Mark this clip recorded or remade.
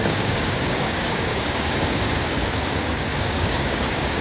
remade